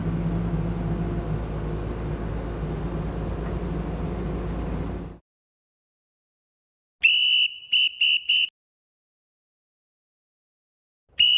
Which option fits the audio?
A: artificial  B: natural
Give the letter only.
B